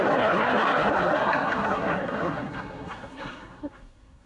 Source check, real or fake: fake